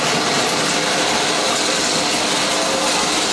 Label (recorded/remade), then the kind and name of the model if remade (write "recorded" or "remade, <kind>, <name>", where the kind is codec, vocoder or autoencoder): recorded